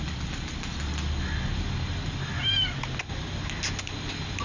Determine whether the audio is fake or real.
real